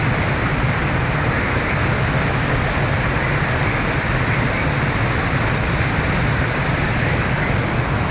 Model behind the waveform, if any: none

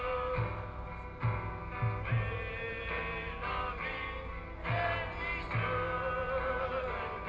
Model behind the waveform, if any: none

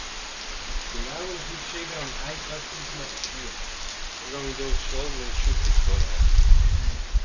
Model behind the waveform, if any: none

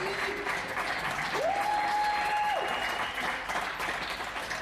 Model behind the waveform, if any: none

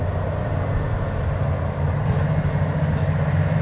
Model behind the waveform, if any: none